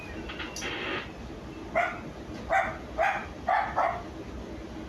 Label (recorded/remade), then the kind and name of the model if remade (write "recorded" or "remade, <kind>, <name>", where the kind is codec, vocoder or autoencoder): recorded